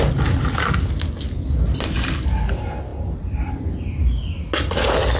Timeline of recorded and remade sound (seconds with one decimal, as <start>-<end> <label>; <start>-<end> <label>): 0.0-5.2 recorded